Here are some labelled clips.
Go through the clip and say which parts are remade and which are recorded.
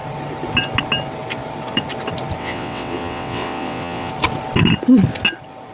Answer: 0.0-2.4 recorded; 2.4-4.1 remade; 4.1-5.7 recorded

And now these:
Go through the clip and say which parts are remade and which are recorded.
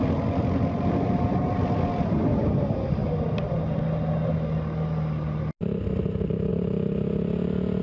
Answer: 0.0-7.8 recorded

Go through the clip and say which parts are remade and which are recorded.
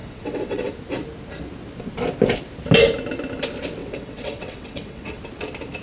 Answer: 0.0-0.7 remade; 0.7-3.8 recorded; 3.8-5.2 remade; 5.2-5.8 recorded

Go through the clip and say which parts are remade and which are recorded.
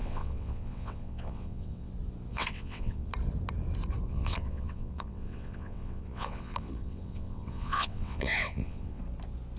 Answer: 0.0-1.9 remade; 1.9-2.3 recorded; 2.3-3.1 remade; 3.1-4.1 recorded; 4.1-9.0 remade; 9.0-9.6 recorded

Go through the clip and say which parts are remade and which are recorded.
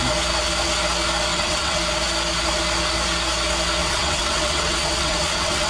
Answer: 0.0-1.3 recorded; 1.3-1.8 remade; 1.8-3.8 recorded; 3.8-5.7 remade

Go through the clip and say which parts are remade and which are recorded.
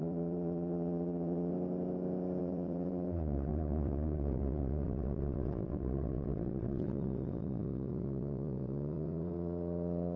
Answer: 0.0-1.5 remade; 1.5-2.4 recorded; 2.4-10.2 remade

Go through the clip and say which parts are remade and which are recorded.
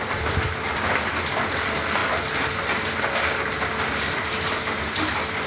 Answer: 0.0-5.5 recorded